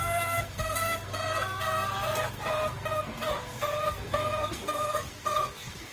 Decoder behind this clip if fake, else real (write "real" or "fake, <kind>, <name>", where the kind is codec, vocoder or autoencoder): fake, codec, SNAC